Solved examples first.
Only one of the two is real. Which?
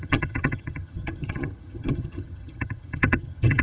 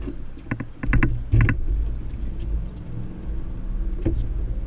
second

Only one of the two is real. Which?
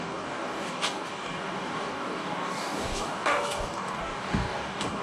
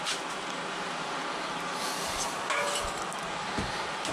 second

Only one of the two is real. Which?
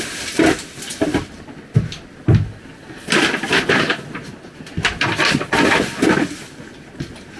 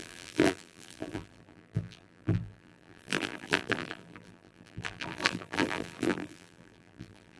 first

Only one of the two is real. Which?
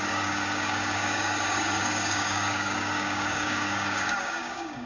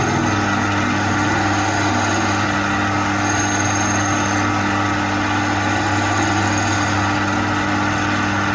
second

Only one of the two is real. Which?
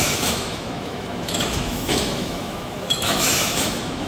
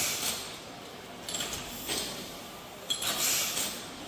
second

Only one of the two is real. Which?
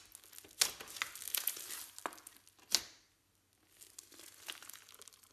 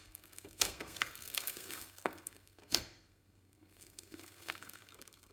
first